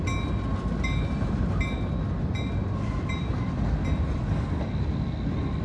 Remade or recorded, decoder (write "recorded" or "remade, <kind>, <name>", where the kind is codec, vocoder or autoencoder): recorded